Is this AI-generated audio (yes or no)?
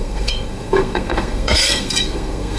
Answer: yes